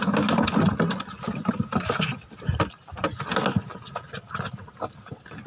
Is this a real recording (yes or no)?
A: yes